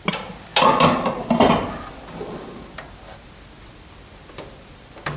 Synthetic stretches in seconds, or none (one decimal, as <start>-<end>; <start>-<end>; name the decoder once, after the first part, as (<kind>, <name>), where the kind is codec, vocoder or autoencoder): none